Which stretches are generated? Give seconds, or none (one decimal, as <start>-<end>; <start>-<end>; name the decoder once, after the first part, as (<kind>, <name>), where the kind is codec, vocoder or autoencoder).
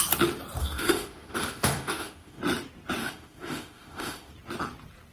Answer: 0.6-2.4 (autoencoder, DAC-VAE); 3.0-4.3